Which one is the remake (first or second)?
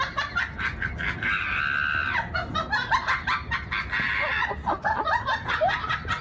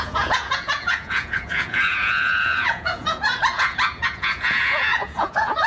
second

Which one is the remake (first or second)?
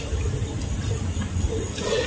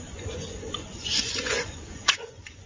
second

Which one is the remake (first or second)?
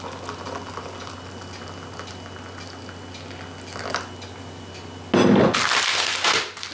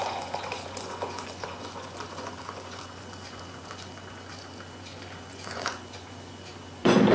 second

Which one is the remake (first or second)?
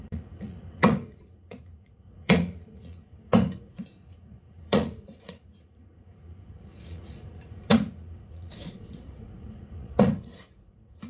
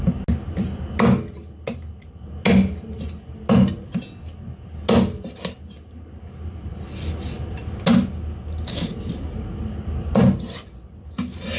first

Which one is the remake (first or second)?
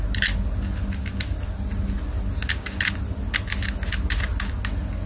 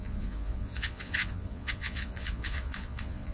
second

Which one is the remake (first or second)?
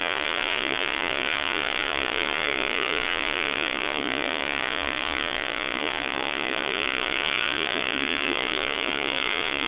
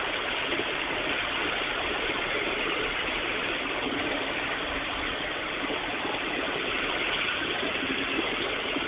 first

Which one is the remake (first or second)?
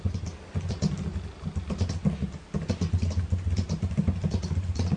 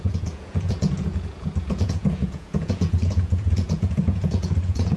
second